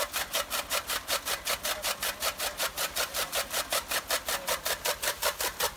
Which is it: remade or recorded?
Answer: recorded